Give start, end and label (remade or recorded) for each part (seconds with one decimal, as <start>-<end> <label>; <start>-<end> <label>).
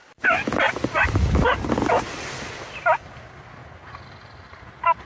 0.0-5.1 recorded